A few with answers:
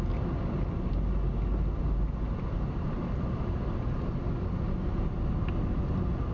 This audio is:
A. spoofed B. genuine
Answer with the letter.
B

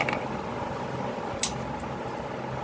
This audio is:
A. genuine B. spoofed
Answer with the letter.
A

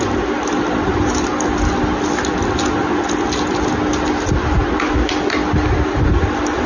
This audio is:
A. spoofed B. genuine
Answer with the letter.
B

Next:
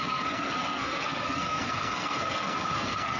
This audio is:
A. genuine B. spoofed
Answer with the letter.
B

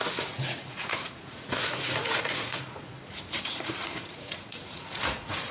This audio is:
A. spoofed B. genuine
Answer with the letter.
A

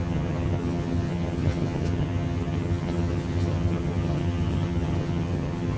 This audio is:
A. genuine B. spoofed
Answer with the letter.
B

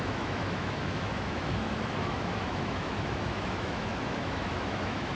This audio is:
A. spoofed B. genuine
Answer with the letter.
A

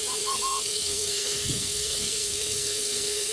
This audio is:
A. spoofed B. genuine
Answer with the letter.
A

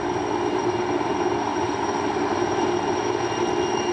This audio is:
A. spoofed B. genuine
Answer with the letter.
B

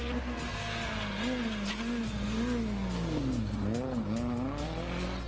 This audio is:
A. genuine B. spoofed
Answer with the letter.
A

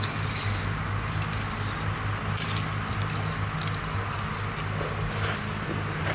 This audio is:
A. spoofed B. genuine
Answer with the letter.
B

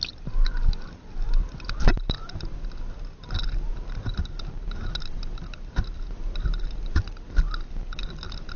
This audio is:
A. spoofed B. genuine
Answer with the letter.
B